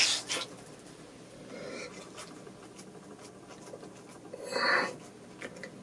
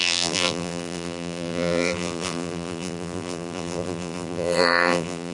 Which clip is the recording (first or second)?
first